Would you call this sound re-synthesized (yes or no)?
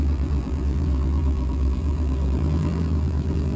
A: yes